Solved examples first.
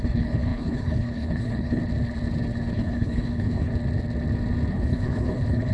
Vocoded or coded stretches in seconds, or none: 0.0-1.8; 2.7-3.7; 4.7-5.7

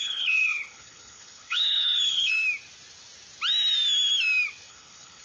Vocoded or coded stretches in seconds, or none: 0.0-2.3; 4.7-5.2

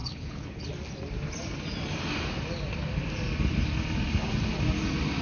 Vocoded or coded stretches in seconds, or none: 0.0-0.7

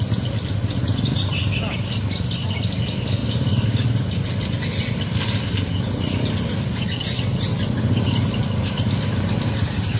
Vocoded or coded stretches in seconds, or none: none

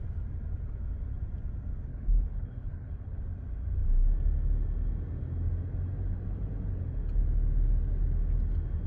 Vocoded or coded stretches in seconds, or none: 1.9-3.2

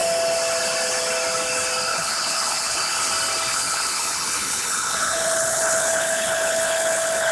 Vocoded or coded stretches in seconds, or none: 1.9-3.1; 3.5-7.3

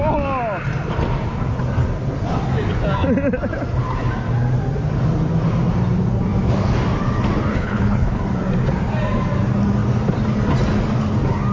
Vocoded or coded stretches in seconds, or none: 7.5-8.2

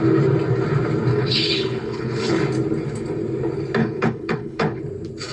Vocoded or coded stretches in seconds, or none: 1.1-2.4; 3.8-4.8